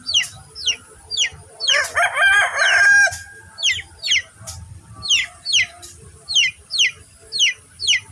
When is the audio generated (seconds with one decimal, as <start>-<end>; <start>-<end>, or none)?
0.0-8.1